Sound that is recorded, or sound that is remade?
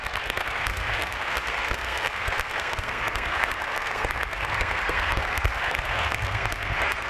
remade